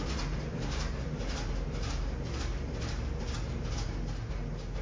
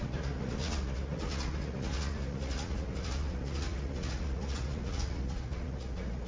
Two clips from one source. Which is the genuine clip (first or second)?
first